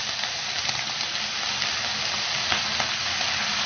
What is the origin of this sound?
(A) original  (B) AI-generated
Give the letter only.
A